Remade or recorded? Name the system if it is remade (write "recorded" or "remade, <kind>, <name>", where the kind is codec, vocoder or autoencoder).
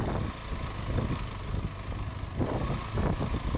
recorded